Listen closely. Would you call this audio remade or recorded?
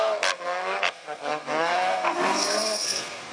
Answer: remade